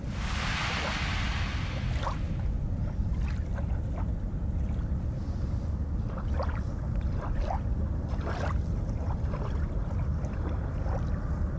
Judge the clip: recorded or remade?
recorded